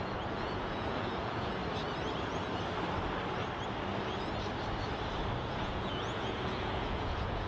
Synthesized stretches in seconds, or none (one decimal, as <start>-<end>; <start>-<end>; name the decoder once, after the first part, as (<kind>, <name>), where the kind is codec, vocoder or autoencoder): 0.0-1.6 (vocoder, Vocos); 5.4-7.5